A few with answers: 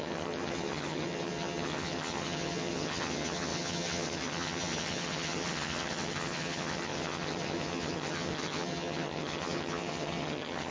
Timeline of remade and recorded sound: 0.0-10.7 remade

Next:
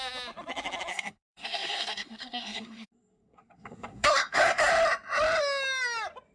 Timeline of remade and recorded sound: 0.0-0.9 recorded; 0.9-4.7 remade; 4.7-6.3 recorded

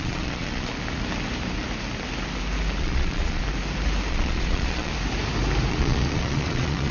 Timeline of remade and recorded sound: 0.0-0.7 remade; 0.7-2.8 recorded; 2.8-3.4 remade; 3.4-4.1 recorded; 4.1-4.9 remade; 4.9-5.7 recorded; 5.7-6.9 remade

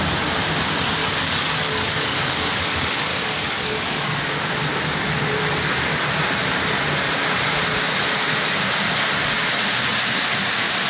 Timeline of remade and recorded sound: 0.0-1.0 recorded; 1.0-2.5 remade; 2.5-3.1 recorded; 3.1-4.5 remade; 4.5-10.9 recorded

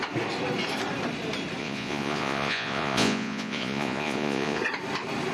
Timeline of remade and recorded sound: 0.0-1.6 recorded; 1.6-4.6 remade; 4.6-5.3 recorded

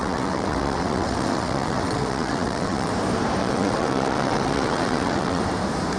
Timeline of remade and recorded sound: 0.0-2.9 remade; 2.9-3.4 recorded; 3.4-5.4 remade; 5.4-6.0 recorded

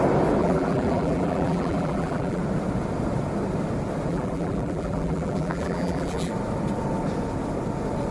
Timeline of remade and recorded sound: 0.0-0.4 recorded; 0.4-2.4 remade; 2.4-4.1 recorded; 4.1-6.3 remade; 6.3-8.1 recorded

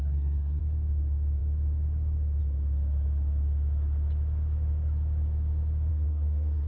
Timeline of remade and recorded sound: 0.0-0.6 remade; 0.6-5.9 recorded; 5.9-6.7 remade